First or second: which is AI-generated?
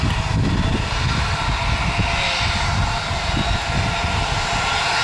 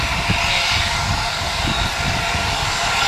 second